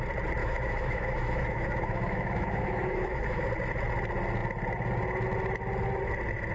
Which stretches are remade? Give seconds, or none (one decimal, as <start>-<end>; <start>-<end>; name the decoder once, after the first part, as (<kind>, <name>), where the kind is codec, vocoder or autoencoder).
0.4-3.5 (autoencoder, DAC-VAE)